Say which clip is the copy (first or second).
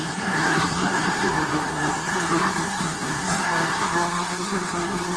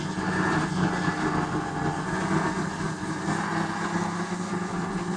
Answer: first